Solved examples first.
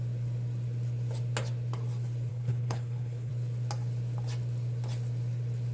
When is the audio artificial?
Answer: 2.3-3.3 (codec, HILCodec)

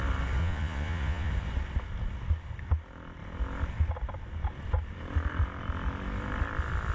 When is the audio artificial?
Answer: 0.4-1.3 (vocoder, Vocos)

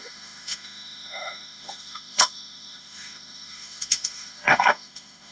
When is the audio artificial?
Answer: 0.0-5.3 (autoencoder, DAC-VAE)

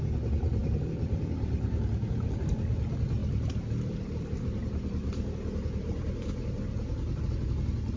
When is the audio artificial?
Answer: 0.6-1.7 (vocoder, BigVGAN v2); 3.2-7.2

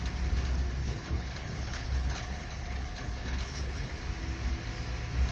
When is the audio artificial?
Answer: 0.8-4.0 (codec, HILCodec)

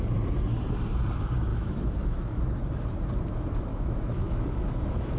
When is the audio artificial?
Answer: 1.5-2.4 (autoencoder, DAC-VAE); 3.7-5.2

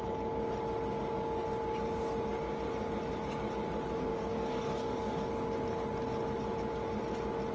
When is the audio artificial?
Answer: 4.1-5.3 (codec, DAC)

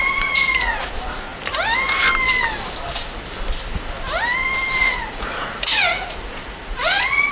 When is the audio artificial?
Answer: 0.0-1.3 (vocoder, Vocos); 4.8-7.3